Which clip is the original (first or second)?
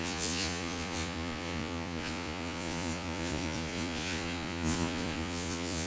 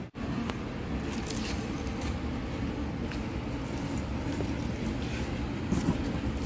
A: second